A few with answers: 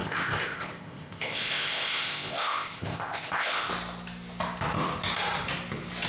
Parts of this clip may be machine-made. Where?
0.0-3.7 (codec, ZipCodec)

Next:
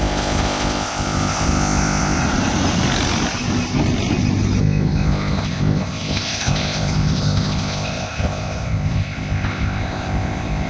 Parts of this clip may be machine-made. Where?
0.0-2.2 (codec, ZipCodec); 4.6-10.7

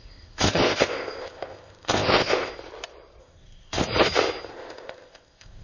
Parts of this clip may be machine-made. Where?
0.0-2.5 (codec, ZipCodec); 3.2-3.8; 4.5-5.6

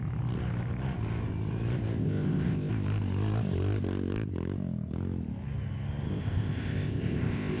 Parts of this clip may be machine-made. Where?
2.0-2.7 (codec, ZipCodec); 6.1-7.6